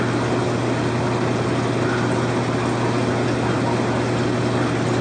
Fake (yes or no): no